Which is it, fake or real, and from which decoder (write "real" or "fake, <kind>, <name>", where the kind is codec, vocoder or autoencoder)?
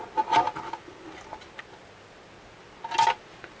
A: real